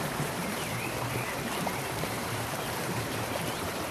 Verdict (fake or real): fake